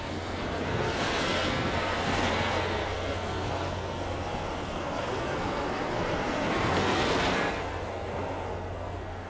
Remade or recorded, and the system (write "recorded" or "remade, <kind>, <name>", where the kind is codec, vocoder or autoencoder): remade, codec, SNAC